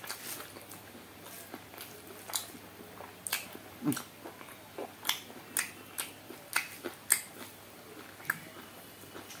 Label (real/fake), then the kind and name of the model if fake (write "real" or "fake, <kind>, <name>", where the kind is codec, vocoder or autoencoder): real